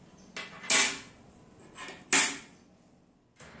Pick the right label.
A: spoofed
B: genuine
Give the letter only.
B